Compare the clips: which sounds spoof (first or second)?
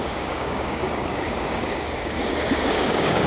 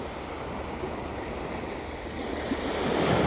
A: first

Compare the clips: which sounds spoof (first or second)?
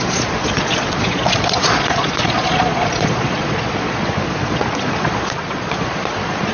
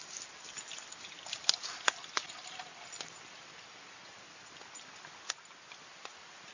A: first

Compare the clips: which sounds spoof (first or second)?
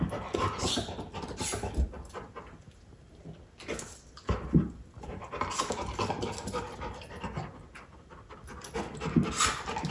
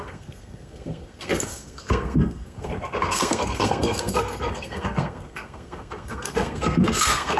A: second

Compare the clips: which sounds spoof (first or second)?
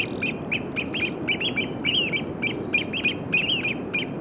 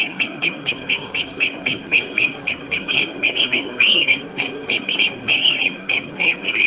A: second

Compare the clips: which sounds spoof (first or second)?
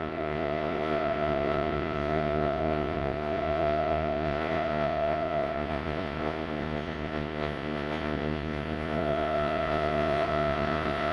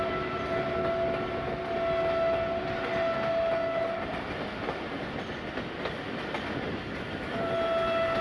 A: first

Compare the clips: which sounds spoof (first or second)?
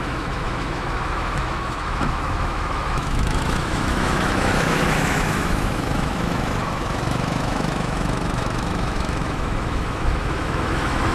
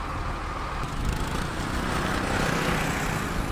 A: first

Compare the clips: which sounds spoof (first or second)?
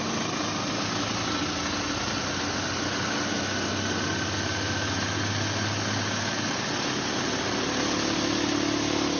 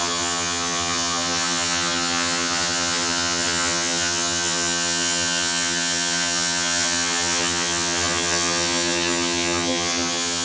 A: second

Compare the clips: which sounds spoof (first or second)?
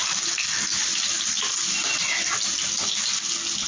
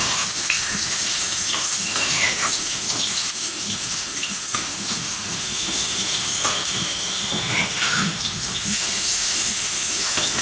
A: second